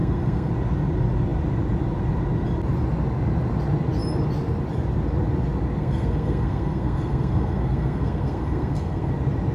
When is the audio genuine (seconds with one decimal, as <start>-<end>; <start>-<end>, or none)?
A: 0.5-5.8; 9.1-9.5